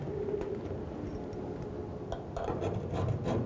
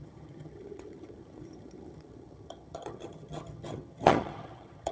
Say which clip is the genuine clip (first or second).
first